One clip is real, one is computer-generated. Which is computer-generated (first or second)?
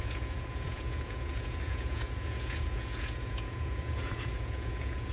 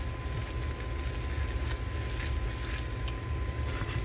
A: first